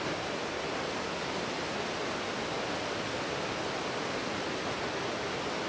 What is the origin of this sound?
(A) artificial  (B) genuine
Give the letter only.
B